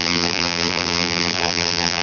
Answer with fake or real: fake